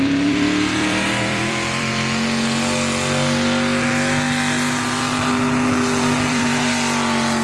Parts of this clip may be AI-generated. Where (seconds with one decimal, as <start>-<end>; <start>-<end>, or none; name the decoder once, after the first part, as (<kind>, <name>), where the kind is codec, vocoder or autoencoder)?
0.0-1.9 (vocoder, BigVGAN v2); 6.3-7.4